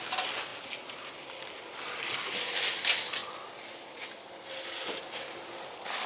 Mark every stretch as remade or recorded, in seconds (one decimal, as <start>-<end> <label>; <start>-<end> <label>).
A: 0.0-6.1 recorded